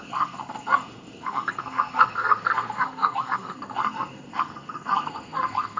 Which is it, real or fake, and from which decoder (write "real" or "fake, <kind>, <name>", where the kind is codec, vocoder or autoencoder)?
fake, codec, SNAC